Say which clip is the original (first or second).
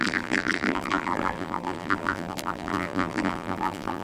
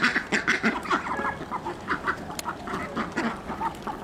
second